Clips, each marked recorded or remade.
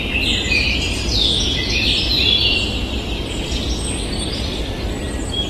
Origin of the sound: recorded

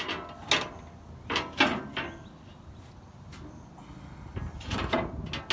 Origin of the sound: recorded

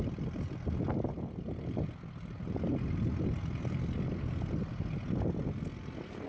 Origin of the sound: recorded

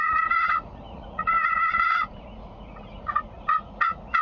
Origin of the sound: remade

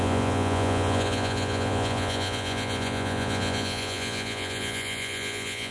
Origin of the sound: remade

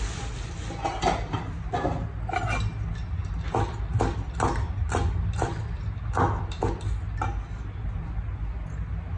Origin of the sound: recorded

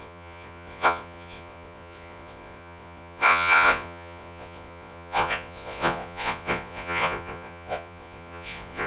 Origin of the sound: remade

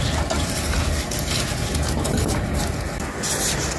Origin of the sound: recorded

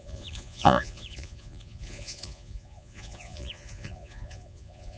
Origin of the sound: remade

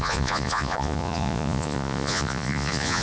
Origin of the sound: remade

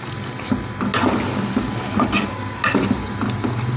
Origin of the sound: recorded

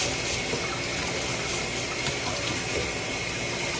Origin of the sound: recorded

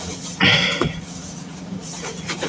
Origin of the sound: remade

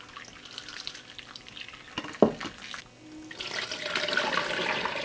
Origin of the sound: recorded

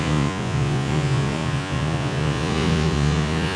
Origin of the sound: remade